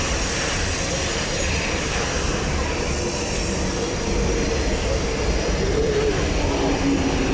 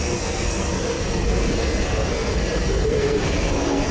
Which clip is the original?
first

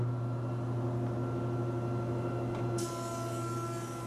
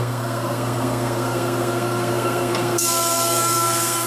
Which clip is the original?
first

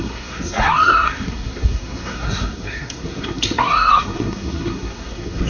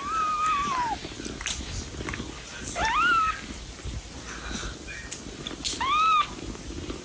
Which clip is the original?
second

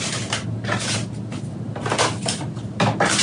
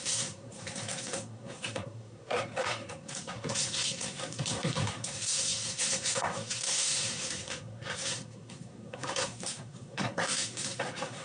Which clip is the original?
first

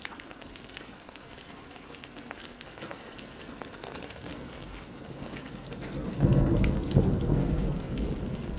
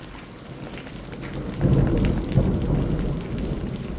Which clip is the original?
second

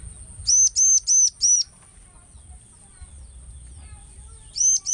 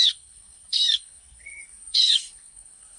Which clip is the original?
first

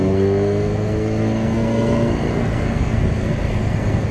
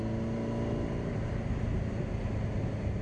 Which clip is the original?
second